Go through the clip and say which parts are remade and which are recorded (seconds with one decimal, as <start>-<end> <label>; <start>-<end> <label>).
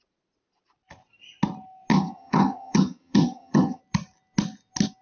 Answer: 0.0-1.9 recorded; 1.9-3.8 remade; 3.8-5.0 recorded